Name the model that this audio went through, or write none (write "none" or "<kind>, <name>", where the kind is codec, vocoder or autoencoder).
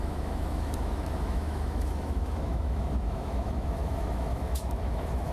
autoencoder, DAC-VAE